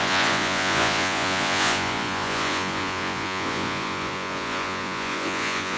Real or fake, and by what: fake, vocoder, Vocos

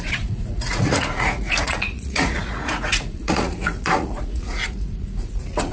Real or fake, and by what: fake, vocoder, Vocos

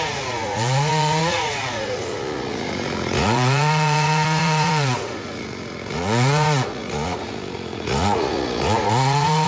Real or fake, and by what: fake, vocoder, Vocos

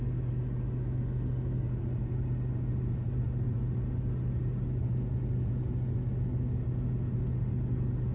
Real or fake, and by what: real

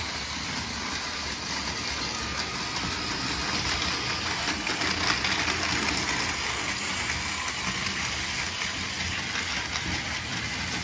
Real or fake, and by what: real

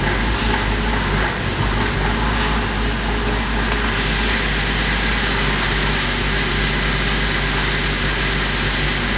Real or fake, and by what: real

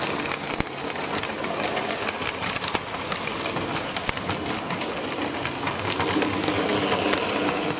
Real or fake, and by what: real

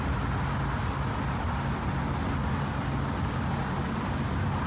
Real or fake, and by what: real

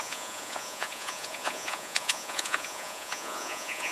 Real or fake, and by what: fake, vocoder, Vocos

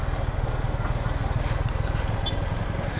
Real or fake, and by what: real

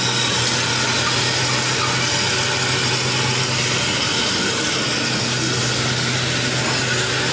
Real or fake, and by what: real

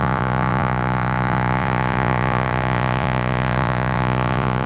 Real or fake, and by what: fake, vocoder, Vocos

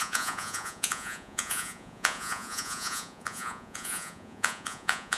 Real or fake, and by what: fake, vocoder, Vocos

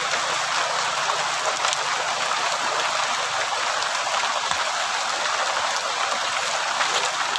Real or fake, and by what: real